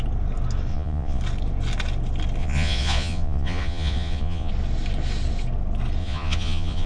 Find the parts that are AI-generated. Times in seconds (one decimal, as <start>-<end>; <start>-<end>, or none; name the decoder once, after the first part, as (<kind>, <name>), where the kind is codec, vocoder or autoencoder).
0.7-1.2 (vocoder, Vocos); 2.4-4.5; 6.0-6.9

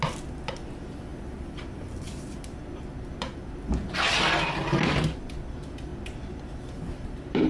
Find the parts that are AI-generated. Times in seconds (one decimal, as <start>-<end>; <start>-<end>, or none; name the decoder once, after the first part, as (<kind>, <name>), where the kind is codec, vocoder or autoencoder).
none

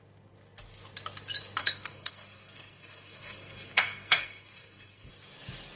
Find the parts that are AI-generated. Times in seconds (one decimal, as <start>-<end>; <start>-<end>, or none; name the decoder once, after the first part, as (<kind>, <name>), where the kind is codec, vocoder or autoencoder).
1.6-5.1 (codec, SNAC)

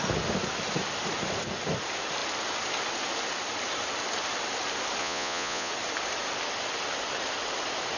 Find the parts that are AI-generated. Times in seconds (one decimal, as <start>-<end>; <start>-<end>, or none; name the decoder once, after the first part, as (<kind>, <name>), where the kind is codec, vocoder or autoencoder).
5.0-5.7 (vocoder, Vocos)

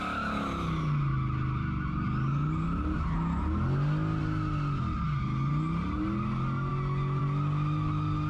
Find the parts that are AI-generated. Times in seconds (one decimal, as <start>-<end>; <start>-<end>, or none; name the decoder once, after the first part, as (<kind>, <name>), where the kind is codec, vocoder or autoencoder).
none

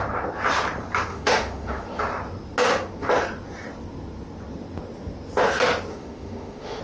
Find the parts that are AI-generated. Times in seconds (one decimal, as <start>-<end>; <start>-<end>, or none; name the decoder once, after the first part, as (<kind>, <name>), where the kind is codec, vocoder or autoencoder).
1.1-1.8 (autoencoder, DAC-VAE); 5.9-6.8